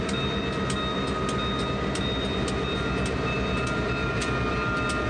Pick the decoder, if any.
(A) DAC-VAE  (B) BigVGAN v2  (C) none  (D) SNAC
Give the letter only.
C